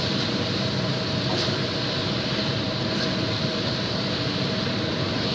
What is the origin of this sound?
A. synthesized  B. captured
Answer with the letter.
A